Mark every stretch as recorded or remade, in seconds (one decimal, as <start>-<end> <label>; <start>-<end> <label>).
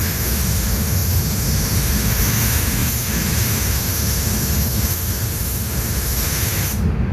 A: 0.0-7.1 remade